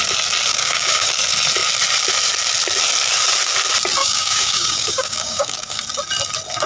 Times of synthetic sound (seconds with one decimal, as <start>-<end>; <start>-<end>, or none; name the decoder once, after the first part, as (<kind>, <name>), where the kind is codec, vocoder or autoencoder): 0.5-1.1 (codec, DAC); 4.0-5.8